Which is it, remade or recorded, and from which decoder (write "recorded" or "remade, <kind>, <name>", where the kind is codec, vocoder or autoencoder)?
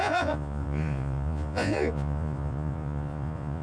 remade, vocoder, Vocos